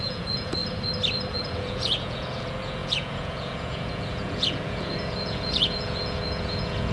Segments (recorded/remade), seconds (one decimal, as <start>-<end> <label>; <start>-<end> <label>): 0.0-0.6 remade; 0.6-1.3 recorded; 1.3-6.9 remade